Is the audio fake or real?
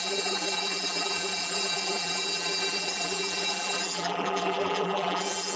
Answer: fake